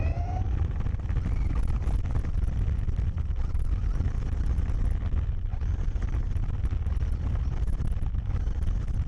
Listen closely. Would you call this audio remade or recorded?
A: recorded